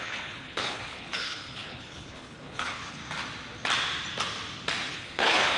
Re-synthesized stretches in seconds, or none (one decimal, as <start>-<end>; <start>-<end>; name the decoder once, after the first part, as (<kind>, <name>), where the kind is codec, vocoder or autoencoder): 0.0-3.0 (codec, HILCodec); 4.9-5.6